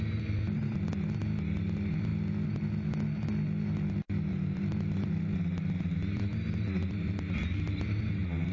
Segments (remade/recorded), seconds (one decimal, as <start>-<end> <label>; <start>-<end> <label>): 0.0-8.5 recorded